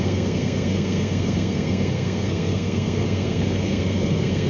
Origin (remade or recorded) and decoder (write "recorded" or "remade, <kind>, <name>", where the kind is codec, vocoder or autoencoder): remade, codec, SNAC